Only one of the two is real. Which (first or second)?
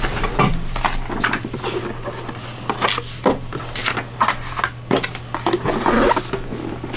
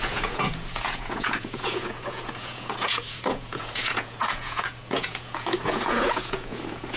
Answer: first